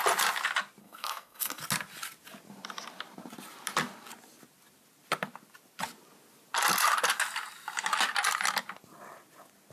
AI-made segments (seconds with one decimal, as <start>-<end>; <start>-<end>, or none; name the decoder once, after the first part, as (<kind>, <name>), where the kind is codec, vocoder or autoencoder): 0.8-1.6 (codec, SNAC)